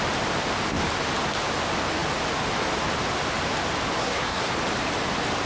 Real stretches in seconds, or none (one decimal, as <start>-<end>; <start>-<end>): 0.0-4.0; 4.5-5.5